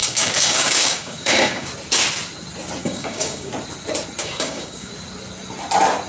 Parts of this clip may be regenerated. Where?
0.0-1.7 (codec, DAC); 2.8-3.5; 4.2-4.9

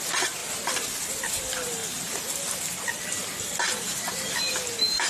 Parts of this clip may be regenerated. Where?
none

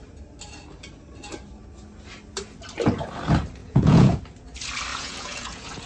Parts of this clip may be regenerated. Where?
3.6-4.2 (vocoder, Vocos); 4.9-5.9

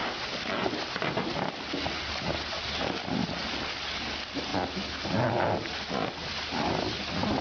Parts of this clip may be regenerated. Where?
none